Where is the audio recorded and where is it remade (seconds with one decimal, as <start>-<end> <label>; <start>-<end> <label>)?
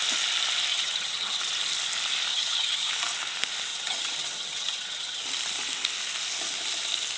0.0-0.7 recorded; 0.7-1.4 remade; 1.4-2.3 recorded; 2.3-2.9 remade; 2.9-3.7 recorded; 3.7-5.2 remade; 5.2-7.2 recorded